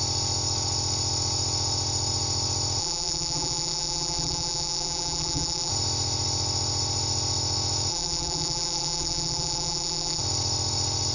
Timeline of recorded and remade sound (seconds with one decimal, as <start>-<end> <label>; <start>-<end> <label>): 0.0-2.8 recorded; 2.8-5.7 remade; 5.7-7.9 recorded; 7.9-10.2 remade; 10.2-11.1 recorded